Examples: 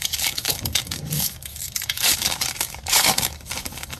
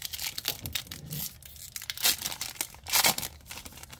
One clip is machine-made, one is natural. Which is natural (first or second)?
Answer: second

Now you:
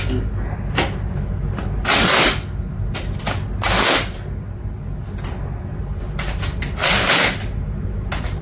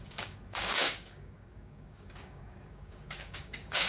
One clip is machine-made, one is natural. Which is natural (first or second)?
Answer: first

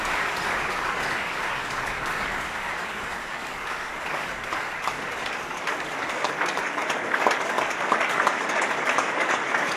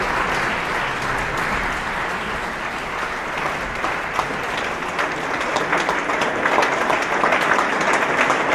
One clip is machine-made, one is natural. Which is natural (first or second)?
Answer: second